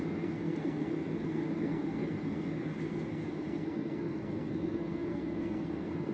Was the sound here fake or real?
fake